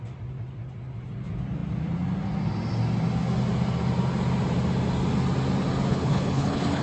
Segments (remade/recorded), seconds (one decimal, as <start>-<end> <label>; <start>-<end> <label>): 0.0-5.9 recorded; 5.9-6.8 remade